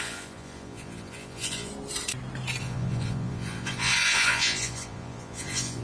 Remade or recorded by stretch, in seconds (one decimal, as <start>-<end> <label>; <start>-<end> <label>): 0.0-1.7 remade; 1.7-2.6 recorded; 2.6-5.8 remade